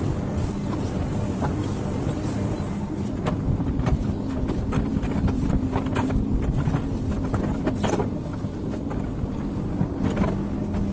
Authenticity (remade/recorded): recorded